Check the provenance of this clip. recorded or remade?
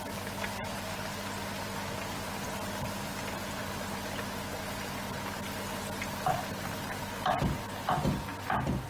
recorded